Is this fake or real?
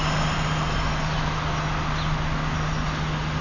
real